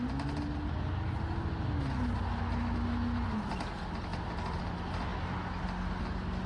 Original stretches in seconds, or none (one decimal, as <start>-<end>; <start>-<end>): 0.0-6.5

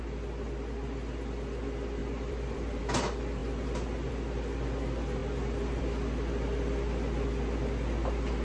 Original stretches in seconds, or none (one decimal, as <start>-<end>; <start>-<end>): 0.0-2.0; 2.8-8.4

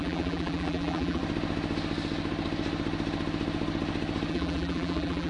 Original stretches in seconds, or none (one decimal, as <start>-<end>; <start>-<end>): 1.2-4.3

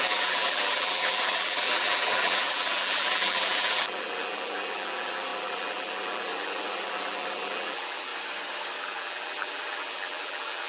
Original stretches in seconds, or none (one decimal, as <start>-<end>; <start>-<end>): 8.1-8.8

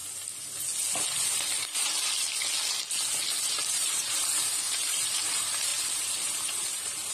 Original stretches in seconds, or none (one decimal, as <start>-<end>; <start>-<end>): 0.0-1.6; 2.0-3.5